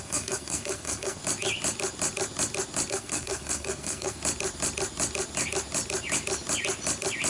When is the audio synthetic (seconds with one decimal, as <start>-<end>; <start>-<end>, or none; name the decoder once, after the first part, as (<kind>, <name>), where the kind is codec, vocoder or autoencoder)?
0.0-1.2 (codec, SNAC); 2.9-4.2